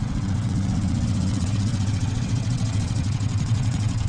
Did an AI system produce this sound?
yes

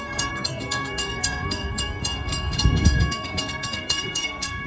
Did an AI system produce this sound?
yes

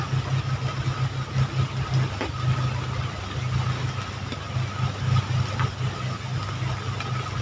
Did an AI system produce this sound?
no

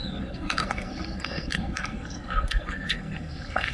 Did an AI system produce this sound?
yes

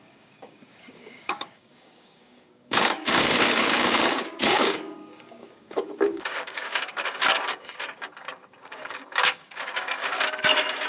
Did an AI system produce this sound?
yes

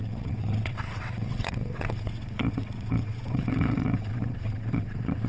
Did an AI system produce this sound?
yes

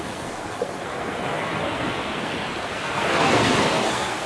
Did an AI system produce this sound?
yes